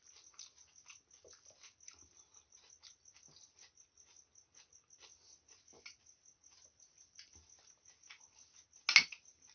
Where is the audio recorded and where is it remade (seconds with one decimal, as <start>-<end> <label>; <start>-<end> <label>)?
0.0-9.5 recorded